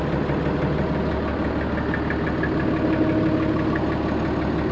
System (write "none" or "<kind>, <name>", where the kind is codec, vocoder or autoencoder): none